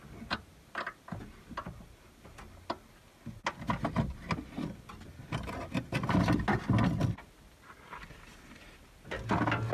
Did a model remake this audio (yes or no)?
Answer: no